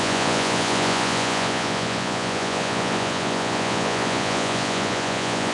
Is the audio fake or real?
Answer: fake